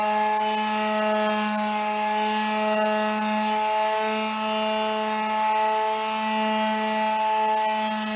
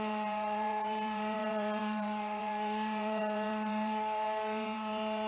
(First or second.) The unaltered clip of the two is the first